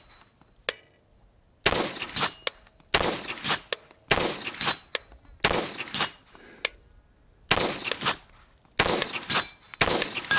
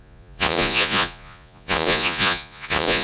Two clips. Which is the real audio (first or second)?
first